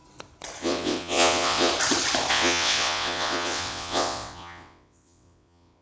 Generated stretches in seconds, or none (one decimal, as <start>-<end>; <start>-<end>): 0.6-1.7; 2.3-5.8